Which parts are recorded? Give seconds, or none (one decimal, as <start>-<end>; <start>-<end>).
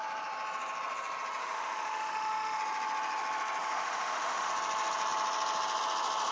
0.0-1.4; 2.6-3.6; 4.5-6.3